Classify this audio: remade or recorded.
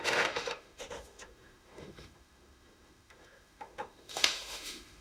remade